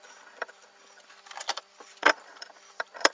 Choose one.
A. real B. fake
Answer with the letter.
B